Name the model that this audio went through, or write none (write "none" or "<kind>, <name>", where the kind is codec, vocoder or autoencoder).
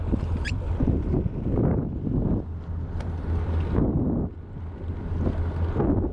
none